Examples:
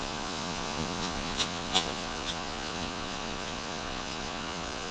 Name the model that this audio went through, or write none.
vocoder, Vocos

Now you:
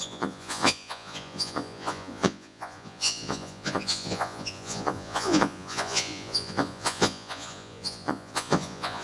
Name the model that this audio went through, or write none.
vocoder, Vocos